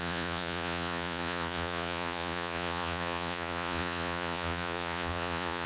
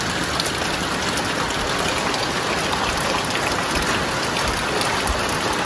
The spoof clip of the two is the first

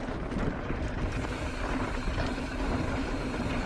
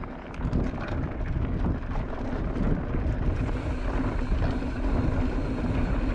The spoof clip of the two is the first